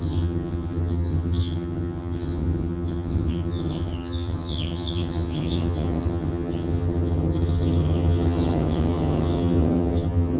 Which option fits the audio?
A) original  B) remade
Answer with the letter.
B